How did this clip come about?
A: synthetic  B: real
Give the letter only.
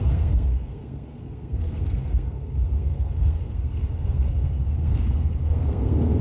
A